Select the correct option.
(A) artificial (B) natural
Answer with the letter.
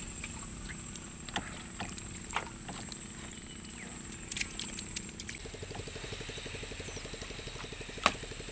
B